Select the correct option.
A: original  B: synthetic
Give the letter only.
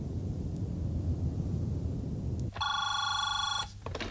A